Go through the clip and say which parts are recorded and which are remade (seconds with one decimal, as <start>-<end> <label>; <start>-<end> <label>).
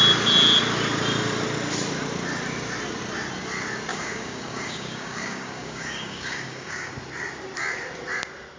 0.0-3.9 recorded; 3.9-6.9 remade; 6.9-8.6 recorded